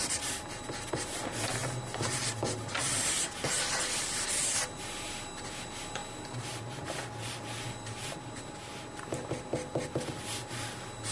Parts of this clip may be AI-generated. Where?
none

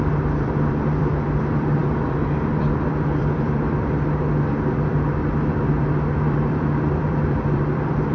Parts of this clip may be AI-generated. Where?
0.0-8.1 (vocoder, BigVGAN v2)

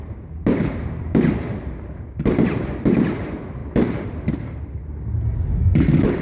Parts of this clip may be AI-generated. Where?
0.4-2.7 (vocoder, BigVGAN v2); 3.6-4.6

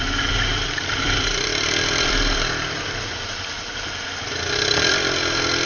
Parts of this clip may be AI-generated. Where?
0.0-0.5 (vocoder, BigVGAN v2); 1.0-5.7